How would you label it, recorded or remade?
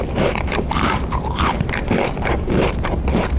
remade